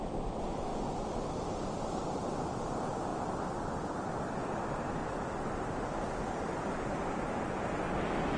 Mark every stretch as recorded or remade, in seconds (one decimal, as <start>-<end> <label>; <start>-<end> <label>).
0.0-3.1 recorded; 3.1-4.1 remade; 4.1-5.0 recorded; 5.0-7.2 remade; 7.2-8.4 recorded